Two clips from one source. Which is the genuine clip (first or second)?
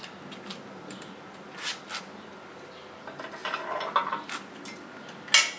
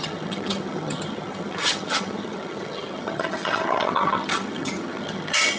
first